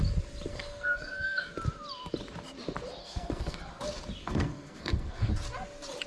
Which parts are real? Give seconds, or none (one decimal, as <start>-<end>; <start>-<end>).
0.0-0.5; 1.5-3.0; 3.6-4.2; 5.3-6.1

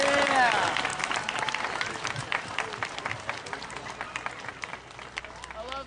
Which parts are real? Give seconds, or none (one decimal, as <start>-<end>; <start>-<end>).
0.0-5.9

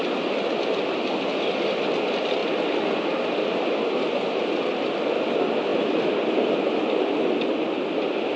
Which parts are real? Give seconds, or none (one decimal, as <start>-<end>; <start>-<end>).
0.0-8.4

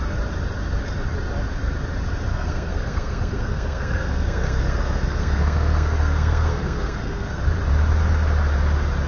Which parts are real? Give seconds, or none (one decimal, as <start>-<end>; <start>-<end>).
0.0-2.3; 7.4-9.1

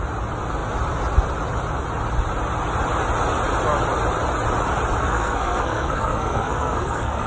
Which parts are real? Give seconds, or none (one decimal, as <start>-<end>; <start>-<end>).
0.0-5.0

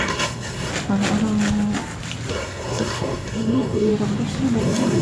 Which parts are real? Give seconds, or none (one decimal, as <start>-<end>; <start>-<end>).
0.7-2.3; 3.9-4.6

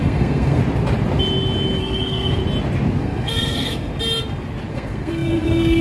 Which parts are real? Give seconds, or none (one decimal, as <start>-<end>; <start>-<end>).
0.6-1.8; 2.4-3.0; 3.9-4.7

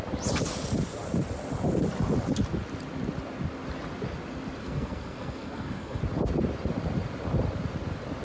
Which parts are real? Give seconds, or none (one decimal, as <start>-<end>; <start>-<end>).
0.0-4.6; 6.0-8.2